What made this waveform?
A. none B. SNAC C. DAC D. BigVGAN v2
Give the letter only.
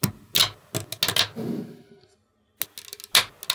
A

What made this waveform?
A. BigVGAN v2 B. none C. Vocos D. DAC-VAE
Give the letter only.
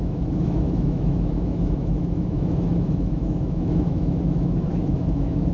D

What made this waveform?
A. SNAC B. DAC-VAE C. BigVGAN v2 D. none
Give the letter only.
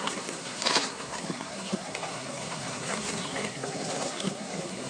A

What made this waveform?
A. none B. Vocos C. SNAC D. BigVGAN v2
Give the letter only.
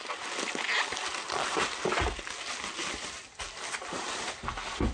A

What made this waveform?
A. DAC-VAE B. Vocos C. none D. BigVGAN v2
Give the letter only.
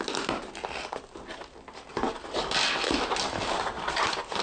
C